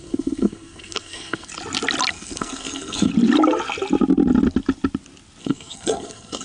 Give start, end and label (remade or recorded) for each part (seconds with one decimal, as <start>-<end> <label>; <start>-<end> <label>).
0.0-1.5 remade; 1.5-2.1 recorded; 2.1-3.1 remade; 3.1-5.4 recorded; 5.4-6.4 remade